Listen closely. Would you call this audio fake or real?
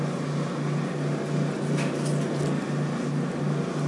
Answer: real